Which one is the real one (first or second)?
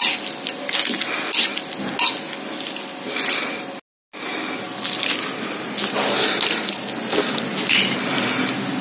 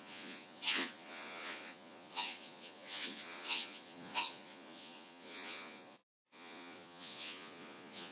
first